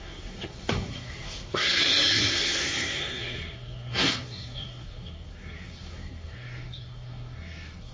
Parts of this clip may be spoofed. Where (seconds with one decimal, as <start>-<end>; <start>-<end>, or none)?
0.0-7.9